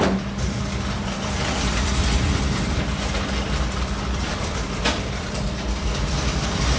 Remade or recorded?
remade